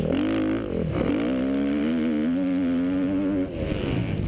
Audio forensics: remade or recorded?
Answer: recorded